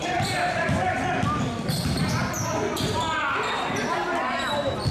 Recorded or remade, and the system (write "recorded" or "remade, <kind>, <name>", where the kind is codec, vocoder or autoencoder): remade, vocoder, BigVGAN v2